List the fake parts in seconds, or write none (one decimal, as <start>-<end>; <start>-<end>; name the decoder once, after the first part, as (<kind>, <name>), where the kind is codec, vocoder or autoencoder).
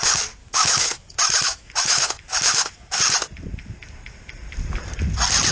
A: 0.4-3.0 (autoencoder, DAC-VAE)